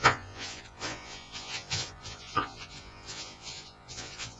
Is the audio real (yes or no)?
no